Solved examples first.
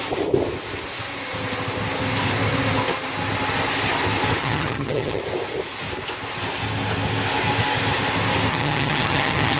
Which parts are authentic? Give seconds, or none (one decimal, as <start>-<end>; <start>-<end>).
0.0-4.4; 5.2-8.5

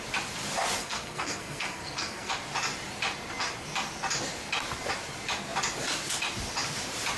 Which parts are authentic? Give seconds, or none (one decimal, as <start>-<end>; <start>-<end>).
0.0-0.8; 2.3-7.2

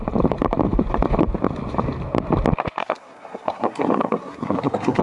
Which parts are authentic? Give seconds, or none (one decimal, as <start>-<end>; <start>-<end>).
0.0-2.8

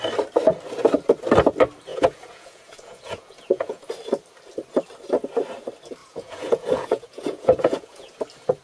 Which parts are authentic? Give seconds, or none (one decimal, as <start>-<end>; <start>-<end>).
0.0-1.9; 3.9-6.0; 8.1-8.6

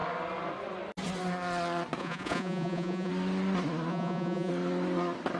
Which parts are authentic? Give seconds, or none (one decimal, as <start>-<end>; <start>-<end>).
0.0-2.0; 3.1-3.9; 4.5-5.4

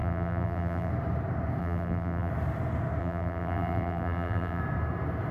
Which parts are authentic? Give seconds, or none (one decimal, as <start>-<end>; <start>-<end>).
0.9-1.6; 2.3-3.0; 4.6-5.3

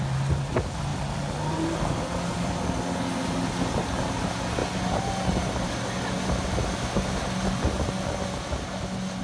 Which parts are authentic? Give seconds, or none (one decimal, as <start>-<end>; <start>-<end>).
0.0-9.2